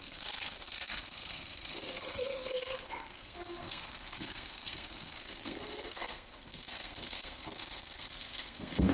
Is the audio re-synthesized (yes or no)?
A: yes